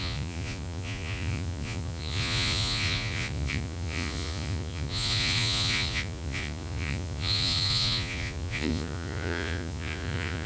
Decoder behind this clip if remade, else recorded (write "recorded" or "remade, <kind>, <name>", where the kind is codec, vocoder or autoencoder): remade, vocoder, Vocos